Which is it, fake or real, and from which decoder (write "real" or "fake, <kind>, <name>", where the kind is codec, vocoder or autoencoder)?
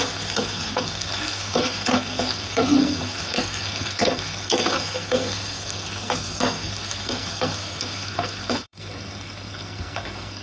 fake, codec, SNAC